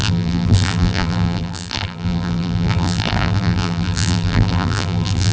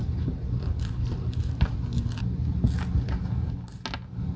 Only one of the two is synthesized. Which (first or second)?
first